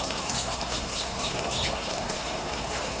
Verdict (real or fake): fake